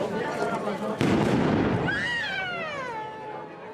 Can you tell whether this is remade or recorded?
recorded